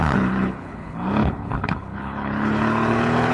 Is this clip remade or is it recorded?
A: remade